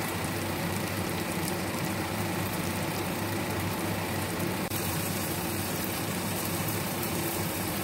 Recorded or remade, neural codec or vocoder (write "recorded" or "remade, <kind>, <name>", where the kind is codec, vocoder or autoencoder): remade, vocoder, BigVGAN v2